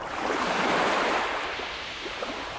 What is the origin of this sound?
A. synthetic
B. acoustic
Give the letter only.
A